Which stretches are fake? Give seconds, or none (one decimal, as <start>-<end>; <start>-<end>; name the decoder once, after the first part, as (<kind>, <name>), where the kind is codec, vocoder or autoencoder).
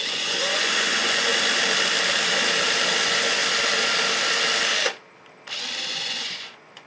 0.0-1.3 (vocoder, Vocos); 3.0-3.4; 5.9-6.9